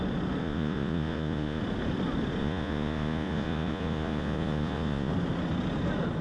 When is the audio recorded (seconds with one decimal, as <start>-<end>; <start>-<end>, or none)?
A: 0.0-0.4; 1.6-2.4; 5.1-6.2